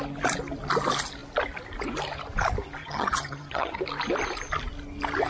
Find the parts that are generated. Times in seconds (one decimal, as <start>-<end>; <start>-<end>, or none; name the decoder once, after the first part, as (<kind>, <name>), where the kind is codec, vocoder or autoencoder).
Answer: 2.8-3.8 (vocoder, HiFi-GAN)